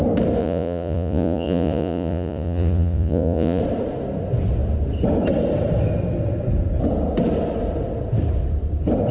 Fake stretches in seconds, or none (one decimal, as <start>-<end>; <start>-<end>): 0.4-3.6